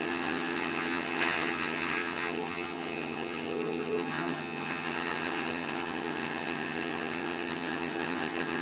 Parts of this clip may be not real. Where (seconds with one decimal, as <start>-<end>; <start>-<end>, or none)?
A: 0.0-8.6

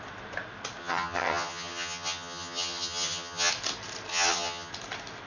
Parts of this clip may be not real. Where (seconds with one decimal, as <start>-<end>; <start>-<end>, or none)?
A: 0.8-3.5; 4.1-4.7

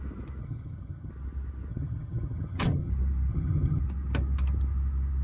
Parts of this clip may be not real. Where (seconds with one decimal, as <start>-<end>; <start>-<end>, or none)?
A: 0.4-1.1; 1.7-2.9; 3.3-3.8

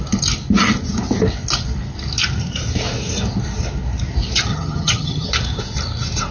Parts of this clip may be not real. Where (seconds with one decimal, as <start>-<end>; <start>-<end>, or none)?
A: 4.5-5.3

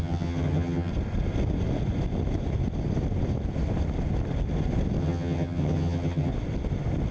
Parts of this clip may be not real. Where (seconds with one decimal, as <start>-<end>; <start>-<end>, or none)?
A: 0.0-0.9; 5.0-6.3

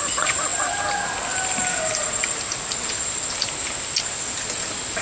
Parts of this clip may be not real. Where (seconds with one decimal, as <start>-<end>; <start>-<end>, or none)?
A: none

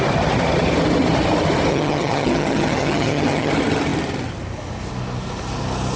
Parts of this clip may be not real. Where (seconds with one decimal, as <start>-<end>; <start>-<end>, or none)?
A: 1.7-3.5